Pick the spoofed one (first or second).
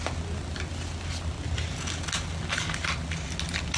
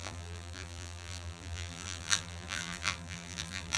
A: second